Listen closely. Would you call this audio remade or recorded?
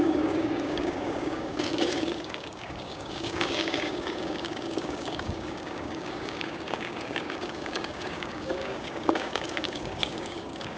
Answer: remade